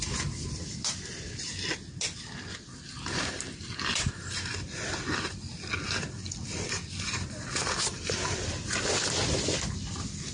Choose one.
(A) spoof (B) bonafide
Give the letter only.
B